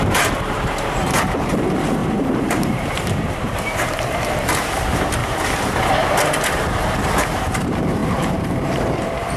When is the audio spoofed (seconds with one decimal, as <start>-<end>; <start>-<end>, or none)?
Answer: 0.0-5.2; 7.5-9.4